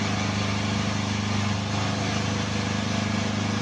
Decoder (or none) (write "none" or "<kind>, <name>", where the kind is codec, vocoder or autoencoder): none